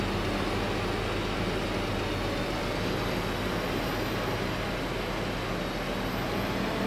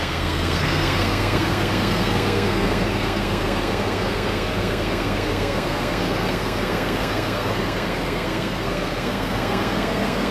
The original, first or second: first